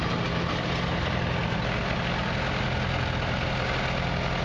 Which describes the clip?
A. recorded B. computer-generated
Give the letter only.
A